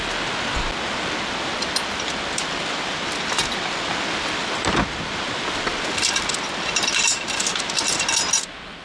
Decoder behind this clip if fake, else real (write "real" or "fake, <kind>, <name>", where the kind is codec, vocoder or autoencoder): real